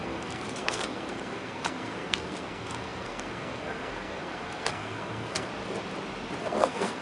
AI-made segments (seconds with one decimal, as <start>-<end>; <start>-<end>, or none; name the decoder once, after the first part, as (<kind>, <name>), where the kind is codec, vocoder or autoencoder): 0.0-5.5 (codec, SNAC); 6.4-7.0

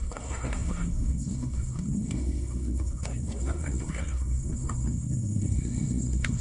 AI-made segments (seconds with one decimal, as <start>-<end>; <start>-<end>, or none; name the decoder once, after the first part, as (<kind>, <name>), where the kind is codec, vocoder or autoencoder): 0.0-6.4 (codec, SNAC)